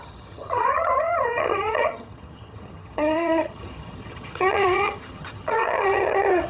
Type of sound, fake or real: fake